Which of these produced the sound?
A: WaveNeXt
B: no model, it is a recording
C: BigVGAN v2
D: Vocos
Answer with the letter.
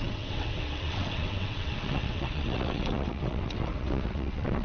A